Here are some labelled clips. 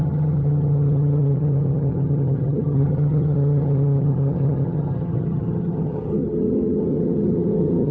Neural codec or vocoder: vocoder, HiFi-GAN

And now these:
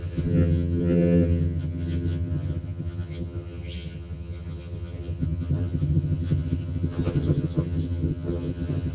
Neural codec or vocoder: vocoder, HiFi-GAN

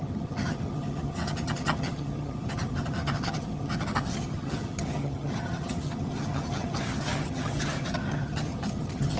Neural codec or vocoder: vocoder, HiFi-GAN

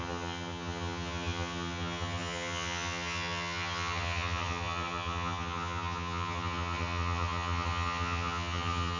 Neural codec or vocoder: vocoder, HiFi-GAN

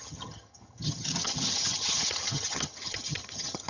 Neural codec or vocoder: vocoder, HiFi-GAN